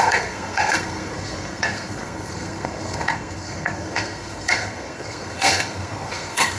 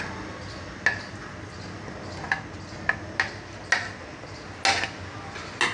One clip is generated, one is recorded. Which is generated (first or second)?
first